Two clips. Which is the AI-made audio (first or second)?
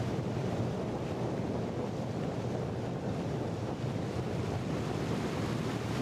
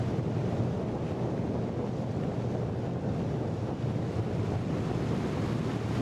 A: first